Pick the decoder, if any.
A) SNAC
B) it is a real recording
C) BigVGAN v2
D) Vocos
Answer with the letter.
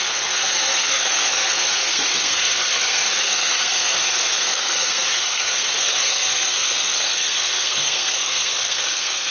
A